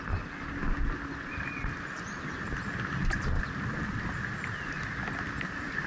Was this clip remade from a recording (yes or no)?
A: no